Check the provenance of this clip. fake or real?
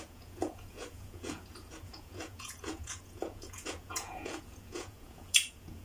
fake